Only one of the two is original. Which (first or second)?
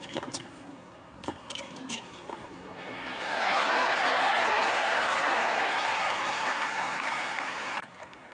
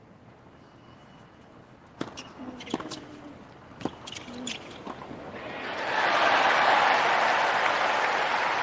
second